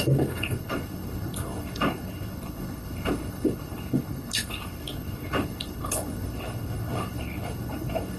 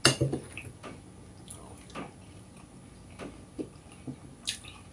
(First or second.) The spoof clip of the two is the first